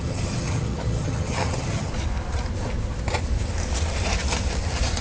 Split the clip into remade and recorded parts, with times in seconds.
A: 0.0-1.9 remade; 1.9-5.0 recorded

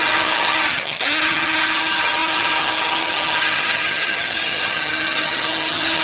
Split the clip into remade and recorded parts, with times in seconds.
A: 0.0-6.0 remade

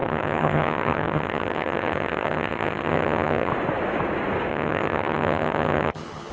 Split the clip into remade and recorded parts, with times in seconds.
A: 0.0-3.5 remade; 3.5-4.5 recorded; 4.5-6.3 remade

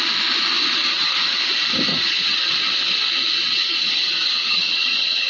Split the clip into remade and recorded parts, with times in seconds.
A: 0.0-0.8 recorded; 0.8-1.4 remade; 1.4-1.9 recorded; 1.9-2.5 remade; 2.5-3.5 recorded; 3.5-5.3 remade

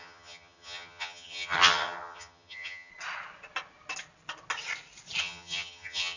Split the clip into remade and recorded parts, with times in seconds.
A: 0.0-2.9 remade; 2.9-5.2 recorded; 5.2-6.2 remade

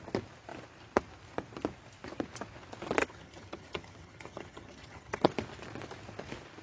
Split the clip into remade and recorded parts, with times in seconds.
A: 0.0-3.0 recorded; 3.0-5.3 remade; 5.3-6.6 recorded

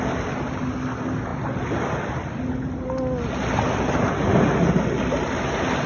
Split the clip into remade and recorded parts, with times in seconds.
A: 0.0-5.9 recorded